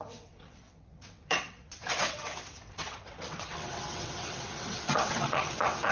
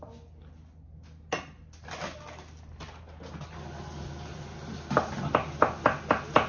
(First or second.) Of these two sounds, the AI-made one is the first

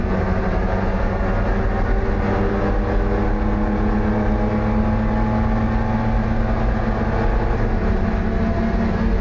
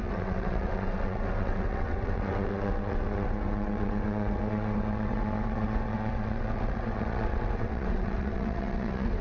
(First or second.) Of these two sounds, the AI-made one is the second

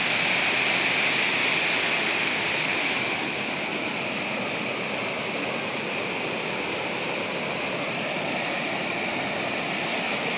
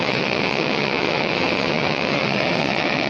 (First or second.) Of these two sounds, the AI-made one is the second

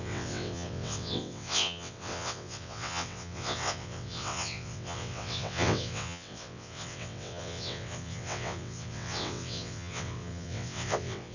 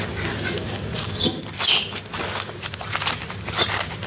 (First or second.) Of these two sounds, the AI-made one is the first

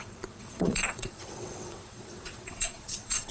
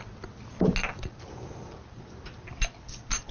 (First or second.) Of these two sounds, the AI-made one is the first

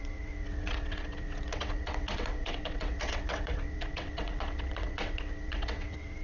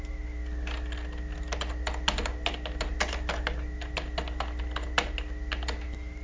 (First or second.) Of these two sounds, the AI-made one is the first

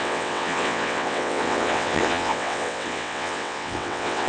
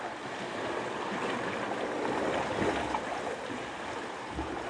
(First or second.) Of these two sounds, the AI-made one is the first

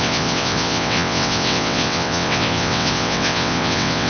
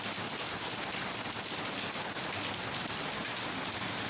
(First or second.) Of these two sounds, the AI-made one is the first